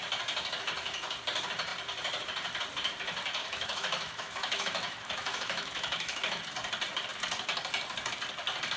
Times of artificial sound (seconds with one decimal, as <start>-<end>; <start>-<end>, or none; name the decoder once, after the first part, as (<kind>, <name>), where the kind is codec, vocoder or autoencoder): 3.4-6.4 (autoencoder, DAC-VAE)